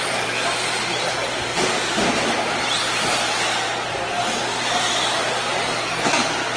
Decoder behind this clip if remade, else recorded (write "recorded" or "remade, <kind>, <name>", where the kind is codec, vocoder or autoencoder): recorded